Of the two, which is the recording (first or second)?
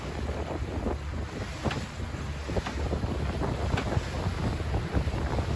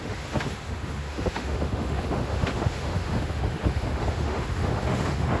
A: first